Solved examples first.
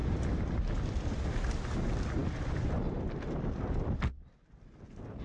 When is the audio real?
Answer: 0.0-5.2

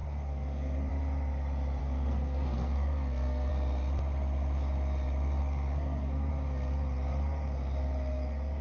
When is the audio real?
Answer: 0.9-1.8; 3.5-5.4; 6.3-8.6

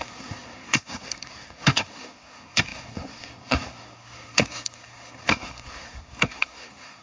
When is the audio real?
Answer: none

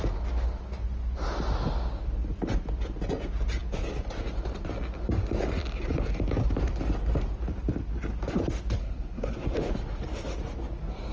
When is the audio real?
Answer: 0.0-8.8; 9.7-11.1